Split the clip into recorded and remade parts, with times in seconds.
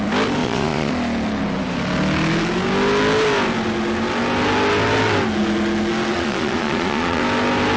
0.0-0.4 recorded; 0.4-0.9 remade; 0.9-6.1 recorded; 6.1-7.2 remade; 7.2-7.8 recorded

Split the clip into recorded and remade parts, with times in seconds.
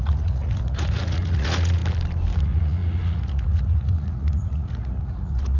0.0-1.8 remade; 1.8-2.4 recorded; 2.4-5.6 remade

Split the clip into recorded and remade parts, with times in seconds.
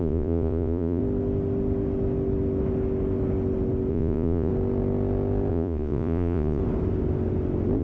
0.0-1.0 remade; 1.0-3.9 recorded; 3.9-4.5 remade; 4.5-5.5 recorded; 5.5-6.6 remade; 6.6-7.8 recorded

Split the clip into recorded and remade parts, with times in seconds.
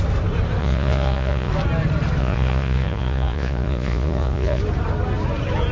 0.0-0.6 recorded; 0.6-1.5 remade; 1.5-2.2 recorded; 2.2-4.6 remade; 4.6-5.7 recorded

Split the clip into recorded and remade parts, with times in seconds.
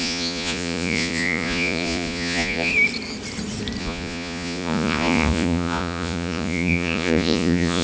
0.0-2.7 remade; 2.7-3.8 recorded; 3.8-7.8 remade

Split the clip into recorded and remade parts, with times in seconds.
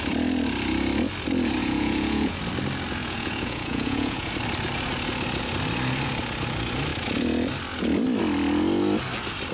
0.0-1.6 recorded; 1.6-2.4 remade; 2.4-3.0 recorded; 3.0-4.3 remade; 4.3-9.5 recorded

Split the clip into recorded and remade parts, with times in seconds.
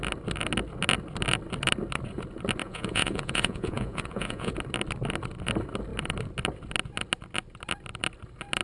0.0-2.6 recorded; 2.6-4.5 remade; 4.5-8.6 recorded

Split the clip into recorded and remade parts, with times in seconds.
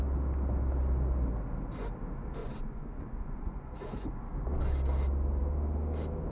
0.0-2.4 recorded; 2.4-4.1 remade; 4.1-6.3 recorded